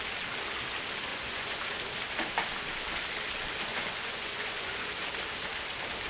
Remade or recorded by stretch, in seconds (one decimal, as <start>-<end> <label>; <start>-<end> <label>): 0.0-1.1 recorded; 1.1-1.6 remade; 1.6-3.7 recorded; 3.7-4.9 remade; 4.9-6.1 recorded